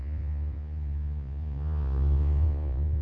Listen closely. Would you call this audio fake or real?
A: fake